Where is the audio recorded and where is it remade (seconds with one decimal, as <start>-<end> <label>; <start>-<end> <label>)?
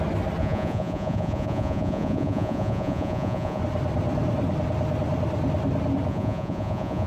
0.0-0.4 recorded; 0.4-3.6 remade; 3.6-6.1 recorded; 6.1-7.1 remade